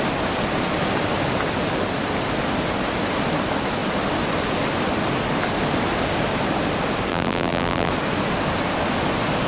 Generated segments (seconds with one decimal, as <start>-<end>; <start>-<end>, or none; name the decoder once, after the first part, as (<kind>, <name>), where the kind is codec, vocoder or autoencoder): 7.1-7.9 (vocoder, BigVGAN v2)